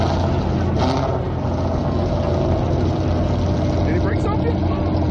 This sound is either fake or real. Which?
real